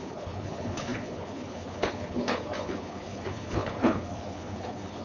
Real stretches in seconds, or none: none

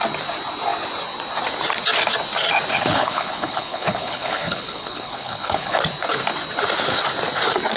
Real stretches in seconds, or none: 0.0-2.7; 5.8-7.8

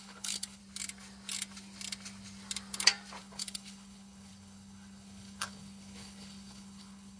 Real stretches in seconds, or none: 0.6-3.2

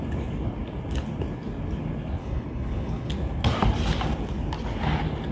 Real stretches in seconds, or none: 0.0-2.2; 3.1-5.3